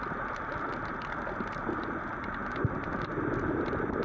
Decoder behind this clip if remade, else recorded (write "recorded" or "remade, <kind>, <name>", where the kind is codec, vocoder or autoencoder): recorded